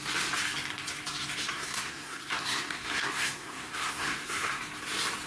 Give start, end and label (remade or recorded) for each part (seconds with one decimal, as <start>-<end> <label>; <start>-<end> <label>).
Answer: 0.0-1.4 recorded; 1.4-4.6 remade; 4.6-5.3 recorded